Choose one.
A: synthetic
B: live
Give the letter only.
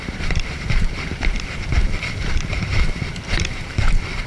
A